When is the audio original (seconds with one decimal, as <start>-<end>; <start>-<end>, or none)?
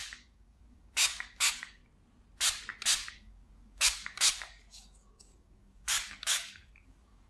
1.8-3.1